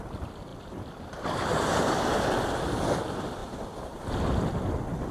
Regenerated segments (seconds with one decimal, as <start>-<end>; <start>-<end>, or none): 0.5-1.7; 3.4-4.0